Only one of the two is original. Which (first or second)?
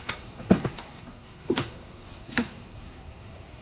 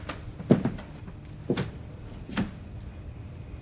second